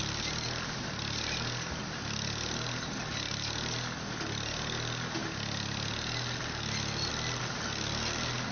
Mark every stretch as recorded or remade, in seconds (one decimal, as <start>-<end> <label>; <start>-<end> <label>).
0.0-8.5 recorded